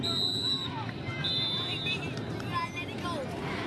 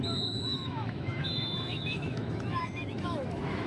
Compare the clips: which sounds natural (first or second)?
first